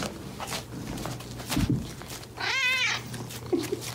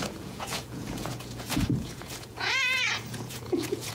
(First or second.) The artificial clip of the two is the second